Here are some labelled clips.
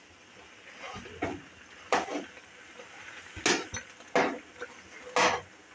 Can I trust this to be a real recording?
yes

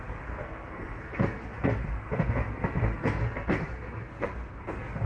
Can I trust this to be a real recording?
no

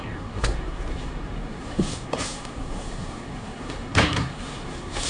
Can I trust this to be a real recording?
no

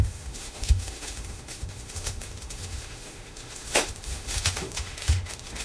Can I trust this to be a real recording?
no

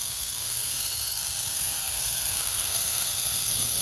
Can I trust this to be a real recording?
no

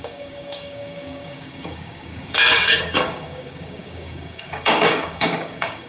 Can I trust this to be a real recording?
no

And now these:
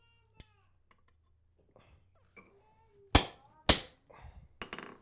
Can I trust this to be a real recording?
yes